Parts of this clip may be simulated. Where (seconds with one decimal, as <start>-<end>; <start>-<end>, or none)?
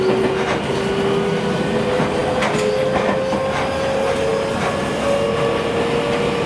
none